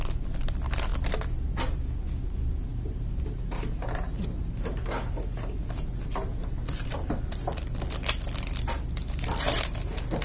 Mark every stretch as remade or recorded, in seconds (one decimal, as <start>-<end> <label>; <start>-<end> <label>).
0.0-10.2 recorded